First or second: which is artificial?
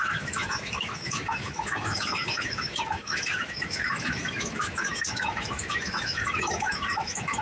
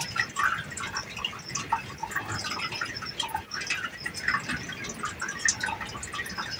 first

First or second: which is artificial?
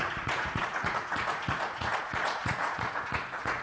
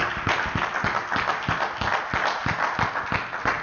first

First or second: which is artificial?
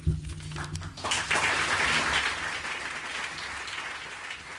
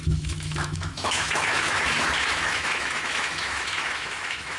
second